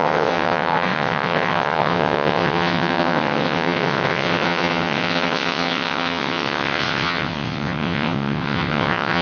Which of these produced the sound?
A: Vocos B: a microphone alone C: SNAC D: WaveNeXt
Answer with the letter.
D